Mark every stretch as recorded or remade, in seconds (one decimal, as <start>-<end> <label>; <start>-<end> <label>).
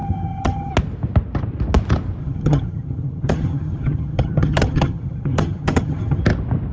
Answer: 0.0-0.7 remade; 0.7-2.2 recorded; 2.2-6.2 remade; 6.2-6.7 recorded